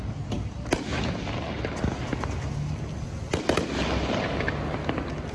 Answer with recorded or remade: recorded